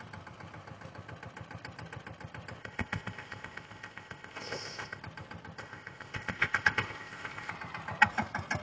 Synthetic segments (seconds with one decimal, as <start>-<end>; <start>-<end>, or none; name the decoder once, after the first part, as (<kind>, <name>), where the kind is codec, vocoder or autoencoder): 2.6-5.0 (codec, ZipCodec); 5.6-7.5